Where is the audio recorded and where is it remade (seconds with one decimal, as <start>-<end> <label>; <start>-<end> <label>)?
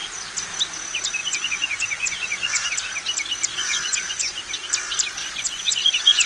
0.0-1.2 recorded; 1.2-2.7 remade; 2.7-3.5 recorded; 3.5-4.5 remade; 4.5-5.2 recorded; 5.2-6.3 remade